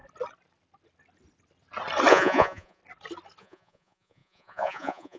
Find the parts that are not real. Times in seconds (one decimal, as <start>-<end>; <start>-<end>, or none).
2.1-2.8; 3.4-5.2